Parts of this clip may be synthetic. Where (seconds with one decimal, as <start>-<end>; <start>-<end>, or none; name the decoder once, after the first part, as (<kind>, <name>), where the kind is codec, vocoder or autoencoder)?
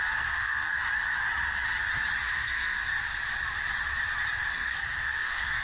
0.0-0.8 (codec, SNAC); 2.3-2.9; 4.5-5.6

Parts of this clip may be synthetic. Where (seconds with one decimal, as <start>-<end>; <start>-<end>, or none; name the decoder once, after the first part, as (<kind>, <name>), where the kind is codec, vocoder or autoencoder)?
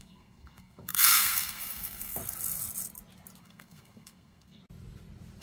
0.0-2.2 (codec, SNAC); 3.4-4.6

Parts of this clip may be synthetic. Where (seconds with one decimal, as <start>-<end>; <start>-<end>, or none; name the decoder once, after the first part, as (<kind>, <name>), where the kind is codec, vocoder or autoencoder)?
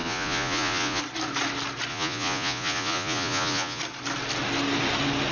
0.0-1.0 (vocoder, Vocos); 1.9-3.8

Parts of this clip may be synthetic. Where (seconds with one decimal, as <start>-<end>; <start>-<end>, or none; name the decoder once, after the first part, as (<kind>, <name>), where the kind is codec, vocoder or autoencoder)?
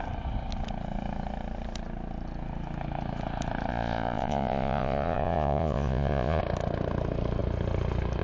3.7-6.4 (vocoder, Vocos)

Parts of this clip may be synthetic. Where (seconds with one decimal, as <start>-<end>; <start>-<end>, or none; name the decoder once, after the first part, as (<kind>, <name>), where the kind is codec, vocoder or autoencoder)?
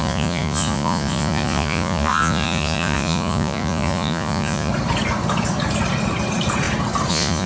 0.0-4.7 (vocoder, Vocos); 7.1-7.5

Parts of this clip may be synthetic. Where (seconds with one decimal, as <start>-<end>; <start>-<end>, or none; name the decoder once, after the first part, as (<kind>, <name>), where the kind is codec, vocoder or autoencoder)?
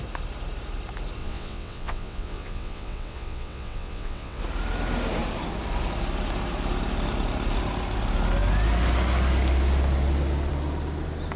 1.2-4.4 (vocoder, WaveNeXt)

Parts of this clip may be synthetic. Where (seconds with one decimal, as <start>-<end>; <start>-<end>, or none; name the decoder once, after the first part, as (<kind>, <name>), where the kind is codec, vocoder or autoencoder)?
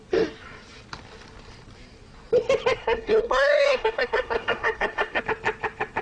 2.8-5.2 (codec, SNAC)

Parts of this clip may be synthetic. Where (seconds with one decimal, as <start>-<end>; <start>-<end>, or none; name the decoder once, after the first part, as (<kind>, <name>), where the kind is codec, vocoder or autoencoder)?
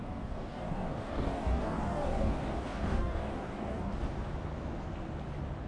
0.0-4.0 (codec, DAC)